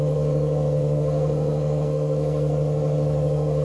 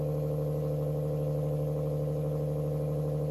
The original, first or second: second